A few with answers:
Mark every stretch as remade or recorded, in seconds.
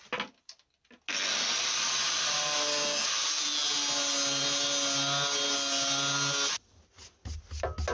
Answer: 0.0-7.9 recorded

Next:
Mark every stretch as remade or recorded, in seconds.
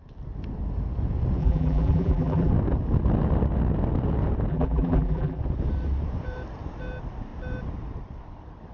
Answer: 0.0-1.4 recorded; 1.4-2.5 remade; 2.5-4.5 recorded; 4.5-5.4 remade; 5.4-8.7 recorded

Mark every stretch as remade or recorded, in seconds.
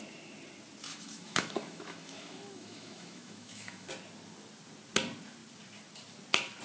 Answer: 0.0-0.9 recorded; 0.9-3.9 remade; 3.9-6.6 recorded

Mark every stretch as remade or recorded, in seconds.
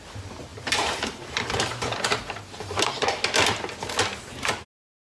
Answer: 0.0-0.5 recorded; 0.5-3.2 remade; 3.2-5.0 recorded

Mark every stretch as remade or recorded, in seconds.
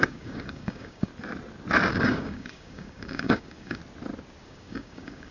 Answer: 0.0-1.1 remade; 1.1-1.9 recorded; 1.9-3.8 remade; 3.8-4.4 recorded; 4.4-5.3 remade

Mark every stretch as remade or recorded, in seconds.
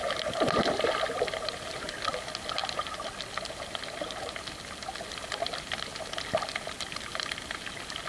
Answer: 0.0-8.1 recorded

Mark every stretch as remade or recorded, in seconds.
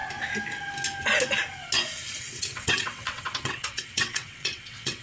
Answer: 0.0-2.2 recorded; 2.2-5.0 remade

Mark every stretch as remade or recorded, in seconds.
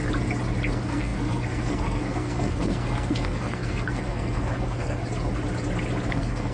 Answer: 0.0-0.7 recorded; 0.7-5.0 remade; 5.0-6.1 recorded; 6.1-6.5 remade